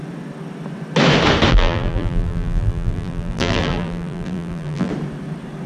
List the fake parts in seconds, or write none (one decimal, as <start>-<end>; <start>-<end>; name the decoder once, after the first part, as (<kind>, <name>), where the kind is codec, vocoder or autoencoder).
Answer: 1.5-4.9 (vocoder, BigVGAN v2)